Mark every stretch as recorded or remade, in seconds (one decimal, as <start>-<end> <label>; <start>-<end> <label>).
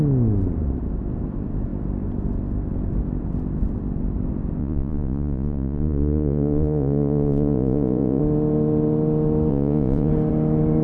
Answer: 0.0-4.6 recorded; 4.6-8.2 remade; 8.2-9.5 recorded; 9.5-10.1 remade; 10.1-10.8 recorded